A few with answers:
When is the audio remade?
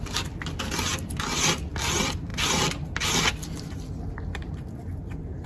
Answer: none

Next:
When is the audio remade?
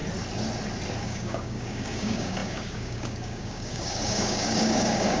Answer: 1.0-5.2 (codec, DAC)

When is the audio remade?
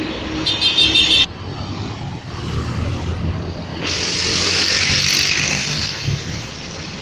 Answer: 5.5-6.5 (codec, DAC)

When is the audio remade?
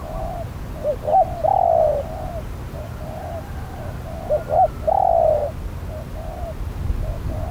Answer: none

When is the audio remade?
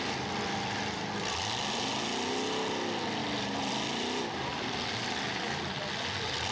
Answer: 3.2-3.7 (vocoder, BigVGAN v2); 4.5-6.0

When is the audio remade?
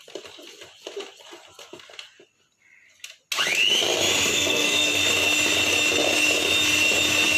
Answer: 4.3-5.0 (codec, SNAC)